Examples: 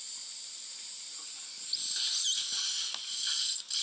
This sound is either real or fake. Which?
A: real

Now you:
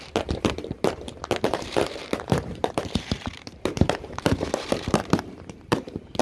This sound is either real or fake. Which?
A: fake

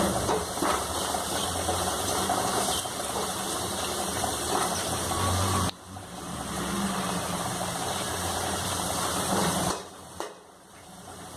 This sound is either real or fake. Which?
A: fake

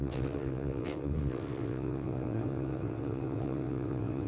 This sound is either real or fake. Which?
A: fake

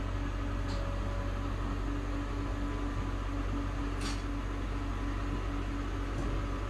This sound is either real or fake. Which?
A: real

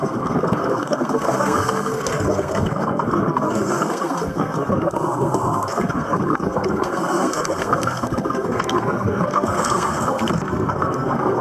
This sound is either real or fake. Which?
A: fake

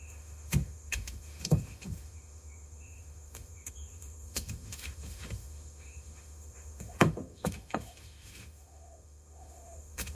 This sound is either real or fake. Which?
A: fake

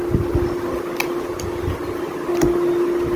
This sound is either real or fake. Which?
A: real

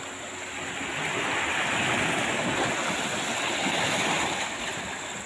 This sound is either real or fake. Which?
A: real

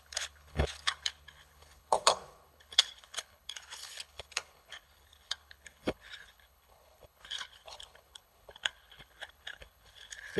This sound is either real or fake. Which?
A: fake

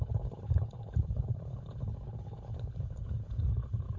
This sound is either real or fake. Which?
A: fake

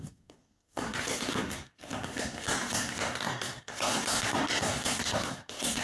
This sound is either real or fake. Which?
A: fake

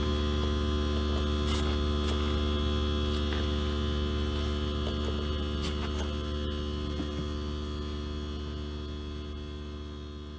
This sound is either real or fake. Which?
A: real